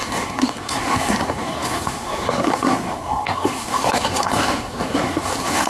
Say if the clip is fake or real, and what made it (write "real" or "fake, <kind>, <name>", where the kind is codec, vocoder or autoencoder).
fake, codec, SNAC